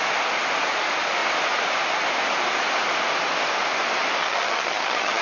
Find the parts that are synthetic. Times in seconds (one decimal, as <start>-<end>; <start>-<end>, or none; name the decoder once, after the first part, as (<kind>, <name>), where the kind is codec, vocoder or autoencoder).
4.2-5.2 (vocoder, HiFi-GAN)